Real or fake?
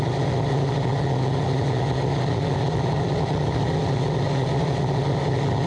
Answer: real